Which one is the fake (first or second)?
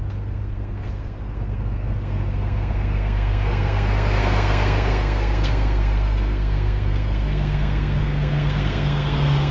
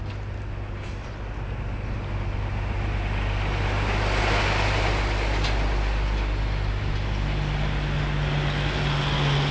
first